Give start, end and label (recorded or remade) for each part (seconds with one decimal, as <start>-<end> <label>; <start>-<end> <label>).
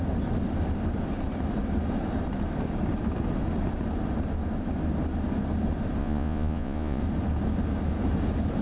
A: 0.0-6.0 recorded; 6.0-7.0 remade; 7.0-8.6 recorded